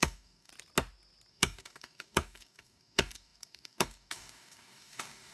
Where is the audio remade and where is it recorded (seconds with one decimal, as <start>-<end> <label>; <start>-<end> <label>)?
0.0-0.5 remade; 0.5-1.3 recorded; 1.3-5.3 remade